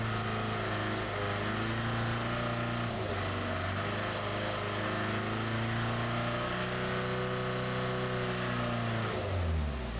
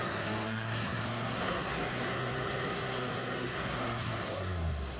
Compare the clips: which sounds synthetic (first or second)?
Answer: second